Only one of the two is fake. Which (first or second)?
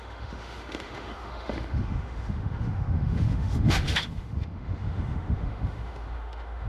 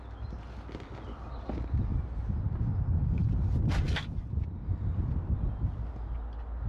first